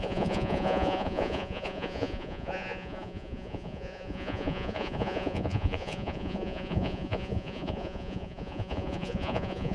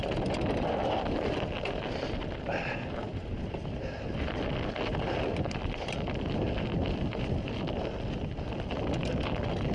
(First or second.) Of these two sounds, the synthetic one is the first